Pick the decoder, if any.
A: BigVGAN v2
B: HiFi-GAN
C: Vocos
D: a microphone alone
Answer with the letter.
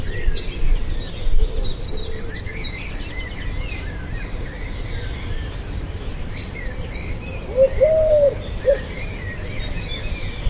A